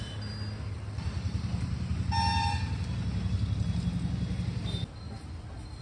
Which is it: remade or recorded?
recorded